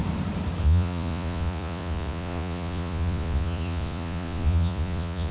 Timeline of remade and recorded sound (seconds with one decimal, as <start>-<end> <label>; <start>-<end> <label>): 0.0-0.6 recorded; 0.6-5.3 remade